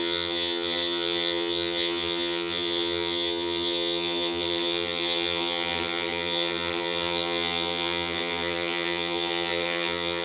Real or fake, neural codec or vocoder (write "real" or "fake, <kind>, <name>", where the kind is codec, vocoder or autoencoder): fake, vocoder, HiFi-GAN